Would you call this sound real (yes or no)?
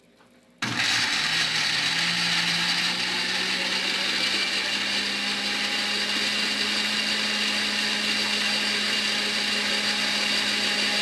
yes